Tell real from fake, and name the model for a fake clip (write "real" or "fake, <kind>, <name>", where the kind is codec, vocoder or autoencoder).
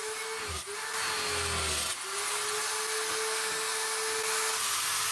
real